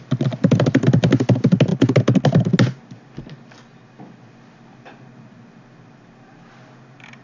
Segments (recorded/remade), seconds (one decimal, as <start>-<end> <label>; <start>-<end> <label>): 0.0-7.2 recorded